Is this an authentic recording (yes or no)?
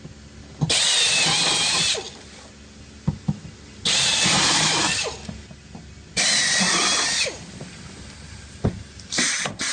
yes